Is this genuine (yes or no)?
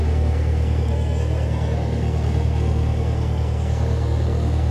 no